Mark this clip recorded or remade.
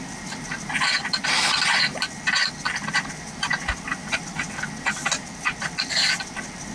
recorded